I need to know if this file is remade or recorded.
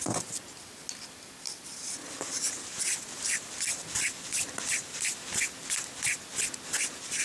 recorded